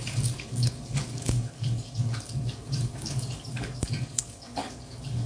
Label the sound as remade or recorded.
remade